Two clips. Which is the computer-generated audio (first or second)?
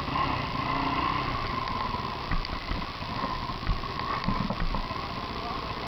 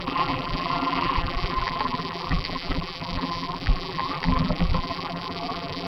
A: second